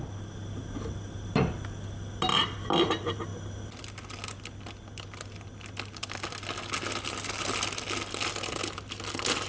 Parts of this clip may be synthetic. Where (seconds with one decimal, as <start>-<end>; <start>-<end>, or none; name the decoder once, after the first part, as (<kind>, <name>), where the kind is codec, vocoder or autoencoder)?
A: none